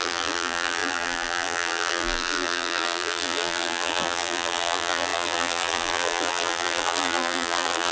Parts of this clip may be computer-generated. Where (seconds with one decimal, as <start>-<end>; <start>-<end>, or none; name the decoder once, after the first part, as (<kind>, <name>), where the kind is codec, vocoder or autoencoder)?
0.0-7.9 (vocoder, BigVGAN v2)